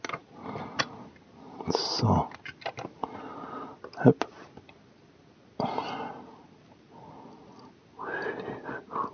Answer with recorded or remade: recorded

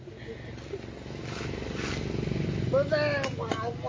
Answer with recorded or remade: recorded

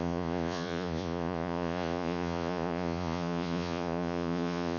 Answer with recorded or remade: remade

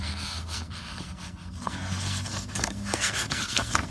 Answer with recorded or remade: remade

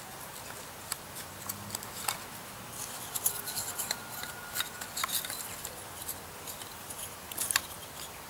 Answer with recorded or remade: recorded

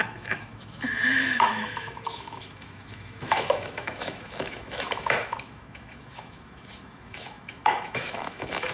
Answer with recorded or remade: remade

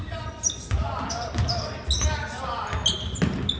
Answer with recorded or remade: recorded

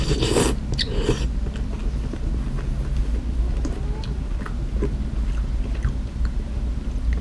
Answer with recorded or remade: recorded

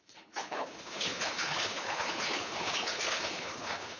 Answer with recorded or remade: remade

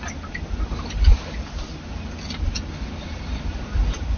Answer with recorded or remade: recorded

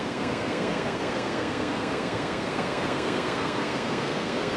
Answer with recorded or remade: remade